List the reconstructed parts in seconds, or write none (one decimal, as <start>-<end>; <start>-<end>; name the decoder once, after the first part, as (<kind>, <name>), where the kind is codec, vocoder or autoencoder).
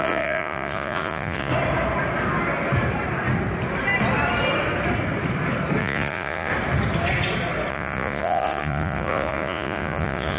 0.0-1.5 (vocoder, Vocos); 5.8-6.5; 7.7-10.4